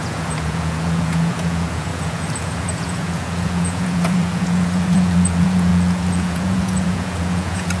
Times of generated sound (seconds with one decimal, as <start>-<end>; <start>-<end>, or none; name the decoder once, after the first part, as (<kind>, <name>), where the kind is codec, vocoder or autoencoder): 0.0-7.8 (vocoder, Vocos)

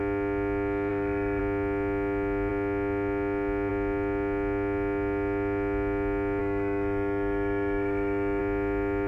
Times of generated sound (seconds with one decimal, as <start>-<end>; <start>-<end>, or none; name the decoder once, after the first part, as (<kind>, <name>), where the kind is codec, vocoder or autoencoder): 0.9-1.4 (autoencoder, DAC-VAE); 6.4-8.4

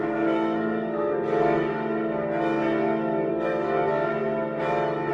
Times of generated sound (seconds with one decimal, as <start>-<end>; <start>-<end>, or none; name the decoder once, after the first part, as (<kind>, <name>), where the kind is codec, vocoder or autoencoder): 0.0-1.7 (codec, SNAC); 3.3-4.1

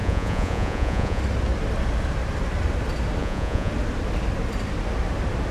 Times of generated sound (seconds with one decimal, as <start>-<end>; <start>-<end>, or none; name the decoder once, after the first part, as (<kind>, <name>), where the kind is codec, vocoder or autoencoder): 0.0-1.2 (vocoder, Vocos); 3.2-3.7

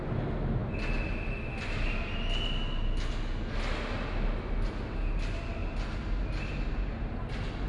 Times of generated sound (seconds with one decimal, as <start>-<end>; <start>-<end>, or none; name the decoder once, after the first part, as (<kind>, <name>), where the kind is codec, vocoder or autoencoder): none